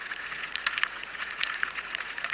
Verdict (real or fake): fake